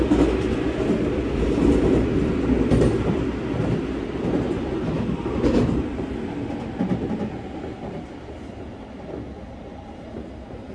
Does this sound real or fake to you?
real